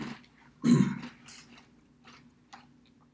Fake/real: real